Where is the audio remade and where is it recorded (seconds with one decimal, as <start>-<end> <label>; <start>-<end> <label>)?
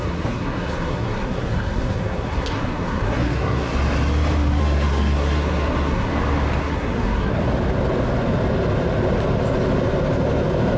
0.0-3.7 remade; 3.7-4.6 recorded; 4.6-6.1 remade; 6.1-6.6 recorded; 6.6-7.4 remade; 7.4-10.8 recorded